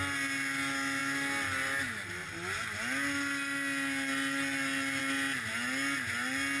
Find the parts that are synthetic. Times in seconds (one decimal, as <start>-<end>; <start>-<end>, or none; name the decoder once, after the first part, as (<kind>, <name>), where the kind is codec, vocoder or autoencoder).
none